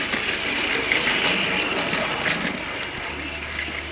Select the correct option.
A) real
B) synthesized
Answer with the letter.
A